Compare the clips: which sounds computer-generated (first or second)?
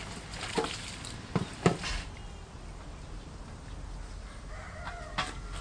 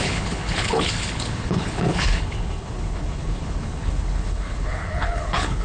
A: second